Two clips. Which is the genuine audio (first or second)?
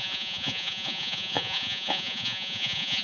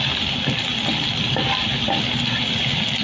second